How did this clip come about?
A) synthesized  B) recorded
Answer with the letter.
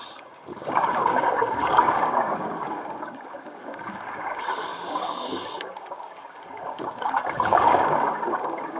A